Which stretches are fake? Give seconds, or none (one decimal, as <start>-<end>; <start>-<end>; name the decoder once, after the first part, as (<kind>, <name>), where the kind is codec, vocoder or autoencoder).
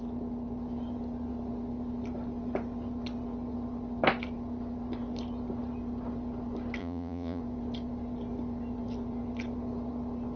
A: 6.8-7.4 (vocoder, Vocos)